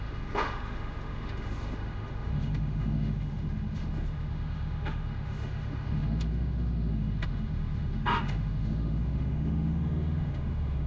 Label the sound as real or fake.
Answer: fake